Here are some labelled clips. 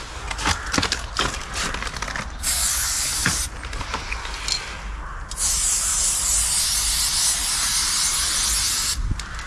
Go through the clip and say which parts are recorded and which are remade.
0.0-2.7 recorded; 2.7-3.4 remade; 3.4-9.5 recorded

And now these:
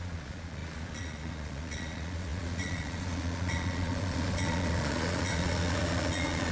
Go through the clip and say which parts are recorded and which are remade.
0.0-6.5 remade

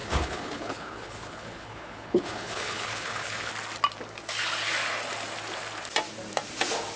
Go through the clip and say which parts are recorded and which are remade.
0.0-3.5 remade; 3.5-7.0 recorded